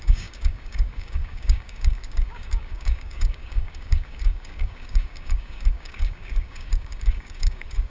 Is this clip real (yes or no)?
no